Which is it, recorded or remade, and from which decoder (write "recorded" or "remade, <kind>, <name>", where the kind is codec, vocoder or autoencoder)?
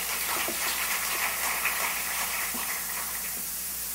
remade, vocoder, BigVGAN v2